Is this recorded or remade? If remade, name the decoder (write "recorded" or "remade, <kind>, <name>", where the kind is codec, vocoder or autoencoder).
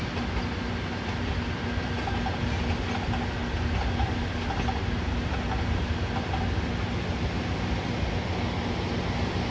recorded